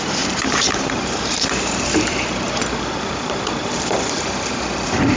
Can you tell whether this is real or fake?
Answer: fake